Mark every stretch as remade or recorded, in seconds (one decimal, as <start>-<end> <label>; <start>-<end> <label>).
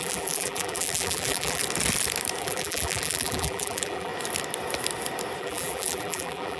0.0-1.6 remade; 1.6-2.4 recorded; 2.4-4.1 remade; 4.1-5.4 recorded; 5.4-6.6 remade